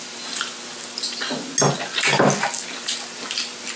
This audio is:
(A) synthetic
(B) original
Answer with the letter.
B